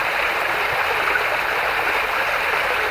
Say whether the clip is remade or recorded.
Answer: recorded